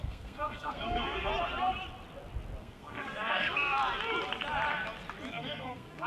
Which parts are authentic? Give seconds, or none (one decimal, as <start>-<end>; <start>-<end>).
1.3-2.6; 3.8-5.3